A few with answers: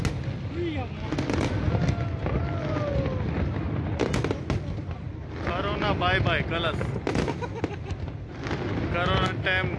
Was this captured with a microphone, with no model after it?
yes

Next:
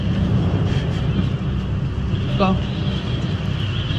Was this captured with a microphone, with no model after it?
yes